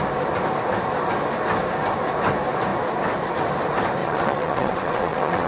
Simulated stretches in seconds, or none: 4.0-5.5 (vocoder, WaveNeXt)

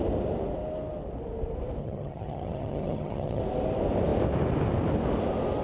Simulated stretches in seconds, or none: 1.8-3.4 (vocoder, HiFi-GAN)

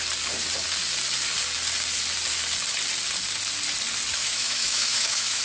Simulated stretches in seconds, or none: 4.2-5.4 (autoencoder, DAC-VAE)

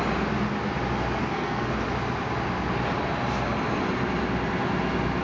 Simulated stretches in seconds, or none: 1.2-1.7 (codec, SNAC)